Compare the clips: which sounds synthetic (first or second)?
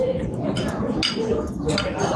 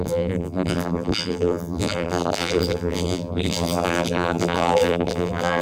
second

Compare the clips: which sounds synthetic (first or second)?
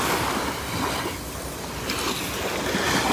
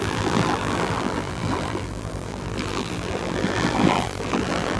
second